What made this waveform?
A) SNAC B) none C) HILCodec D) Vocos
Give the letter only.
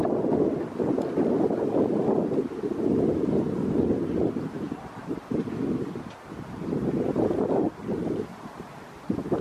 B